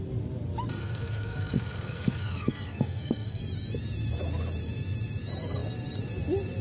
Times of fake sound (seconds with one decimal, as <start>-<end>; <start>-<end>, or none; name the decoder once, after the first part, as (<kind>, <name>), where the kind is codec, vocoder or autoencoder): 0.8-3.4 (codec, SNAC)